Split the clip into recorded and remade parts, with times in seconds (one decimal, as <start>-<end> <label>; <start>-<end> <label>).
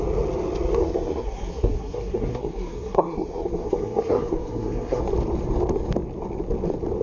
0.0-0.8 recorded; 0.8-5.0 remade; 5.0-7.0 recorded